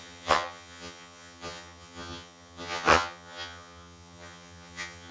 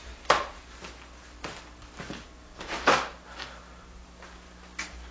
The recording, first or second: second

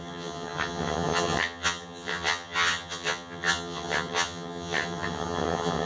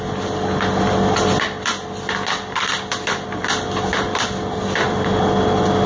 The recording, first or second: second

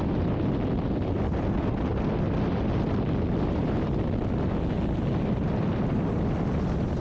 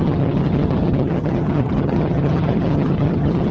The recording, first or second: first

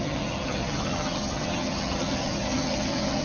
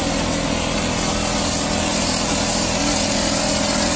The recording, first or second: second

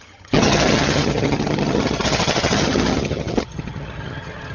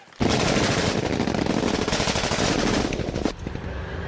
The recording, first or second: second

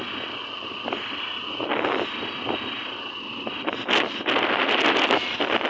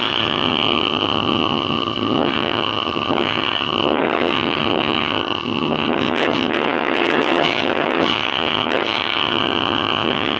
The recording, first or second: first